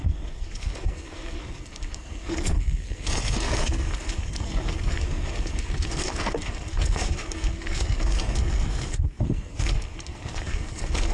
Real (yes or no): no